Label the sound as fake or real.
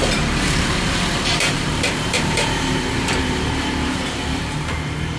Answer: fake